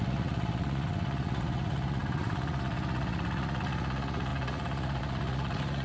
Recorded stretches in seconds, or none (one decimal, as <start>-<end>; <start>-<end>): none